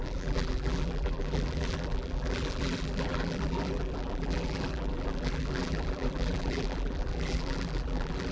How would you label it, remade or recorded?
remade